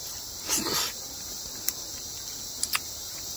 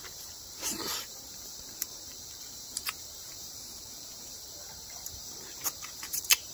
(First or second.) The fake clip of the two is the second